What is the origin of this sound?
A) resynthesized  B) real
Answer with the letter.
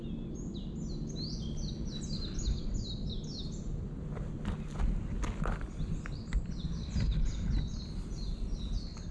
B